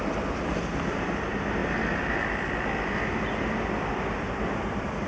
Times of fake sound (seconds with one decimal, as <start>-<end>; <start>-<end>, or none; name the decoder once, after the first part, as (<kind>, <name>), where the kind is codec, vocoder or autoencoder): 0.0-1.6 (vocoder, BigVGAN v2); 3.6-5.1